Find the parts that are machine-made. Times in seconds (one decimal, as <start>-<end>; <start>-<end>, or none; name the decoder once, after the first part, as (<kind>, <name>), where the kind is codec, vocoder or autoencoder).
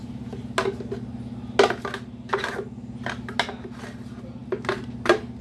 none